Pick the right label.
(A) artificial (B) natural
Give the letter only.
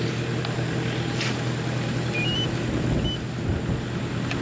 B